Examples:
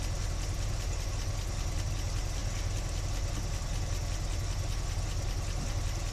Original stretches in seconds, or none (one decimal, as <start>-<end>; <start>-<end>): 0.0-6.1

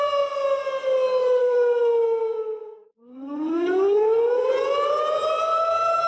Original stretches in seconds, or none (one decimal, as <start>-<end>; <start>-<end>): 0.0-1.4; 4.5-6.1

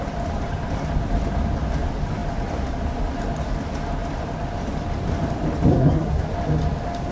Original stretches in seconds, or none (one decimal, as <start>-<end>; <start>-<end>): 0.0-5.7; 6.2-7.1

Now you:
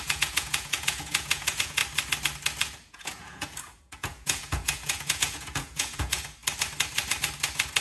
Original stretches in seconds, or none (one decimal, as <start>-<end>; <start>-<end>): 1.8-2.9; 6.4-7.8